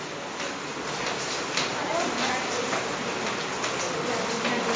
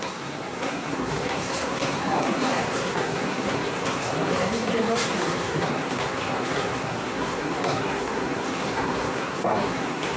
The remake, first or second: second